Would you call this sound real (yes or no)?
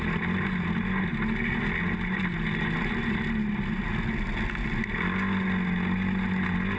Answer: yes